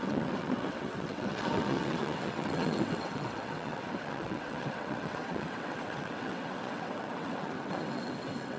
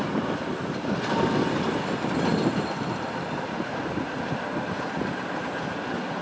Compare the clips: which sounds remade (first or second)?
first